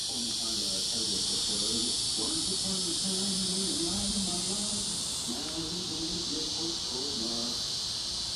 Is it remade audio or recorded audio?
recorded